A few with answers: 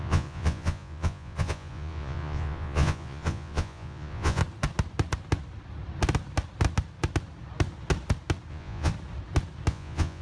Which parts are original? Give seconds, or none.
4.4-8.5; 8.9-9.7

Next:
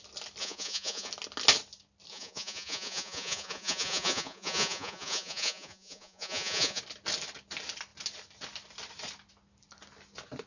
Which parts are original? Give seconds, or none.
0.0-0.4; 1.1-2.1; 6.8-10.5

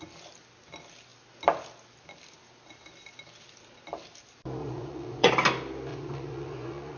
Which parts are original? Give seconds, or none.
0.0-4.6; 5.3-5.9

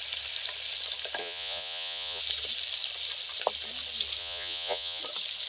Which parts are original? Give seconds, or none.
0.0-1.2; 2.2-4.2; 5.0-5.5

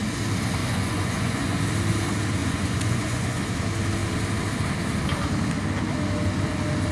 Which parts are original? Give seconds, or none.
0.0-0.6; 1.6-2.4; 3.4-6.9

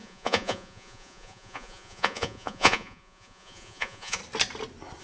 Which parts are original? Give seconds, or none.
4.2-5.0

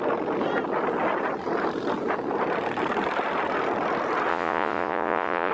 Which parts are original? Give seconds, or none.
0.0-4.3

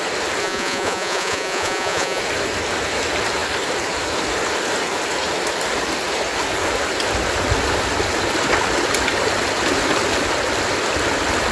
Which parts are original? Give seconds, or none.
0.0-0.4; 2.2-11.5